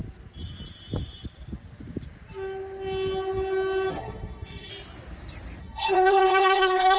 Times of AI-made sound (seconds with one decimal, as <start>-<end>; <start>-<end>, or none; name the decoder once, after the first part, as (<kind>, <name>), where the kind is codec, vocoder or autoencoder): 3.9-4.7 (codec, SNAC); 5.6-7.0